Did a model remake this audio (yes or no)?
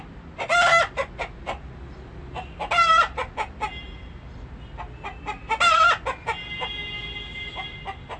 no